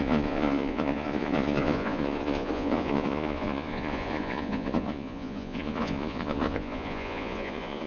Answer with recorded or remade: remade